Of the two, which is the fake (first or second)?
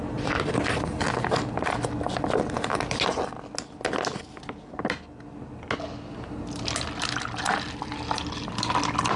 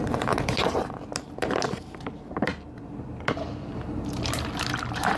second